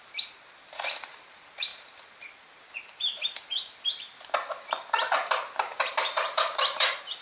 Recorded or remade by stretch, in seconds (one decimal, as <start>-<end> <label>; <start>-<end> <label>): 0.0-7.2 remade